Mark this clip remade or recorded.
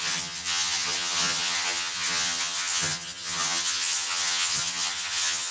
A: remade